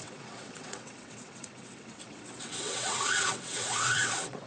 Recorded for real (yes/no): no